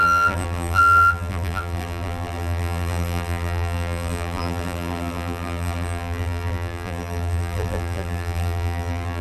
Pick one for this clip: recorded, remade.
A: remade